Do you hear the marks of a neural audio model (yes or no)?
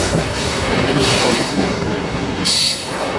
yes